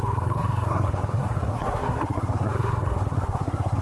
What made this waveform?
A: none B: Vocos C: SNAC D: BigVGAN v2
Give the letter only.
C